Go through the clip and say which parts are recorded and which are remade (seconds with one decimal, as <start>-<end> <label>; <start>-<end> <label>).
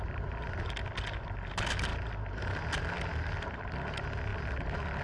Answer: 0.0-5.0 recorded